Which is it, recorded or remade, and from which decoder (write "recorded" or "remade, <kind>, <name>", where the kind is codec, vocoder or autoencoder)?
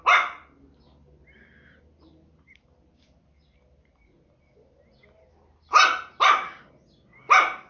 recorded